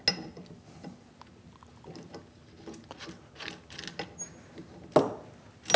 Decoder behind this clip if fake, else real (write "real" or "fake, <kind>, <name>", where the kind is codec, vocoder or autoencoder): real